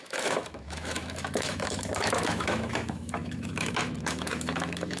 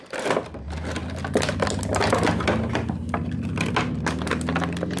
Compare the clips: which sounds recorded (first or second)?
second